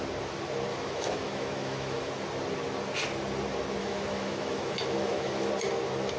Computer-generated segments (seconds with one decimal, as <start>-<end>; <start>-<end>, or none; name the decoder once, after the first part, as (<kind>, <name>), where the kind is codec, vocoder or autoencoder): 0.7-2.1 (autoencoder, DAC-VAE); 3.8-5.5